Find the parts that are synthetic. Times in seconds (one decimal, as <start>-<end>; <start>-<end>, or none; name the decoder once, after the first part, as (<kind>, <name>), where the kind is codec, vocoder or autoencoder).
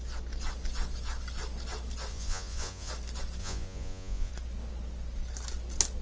2.1-2.9 (vocoder, Vocos); 3.4-4.3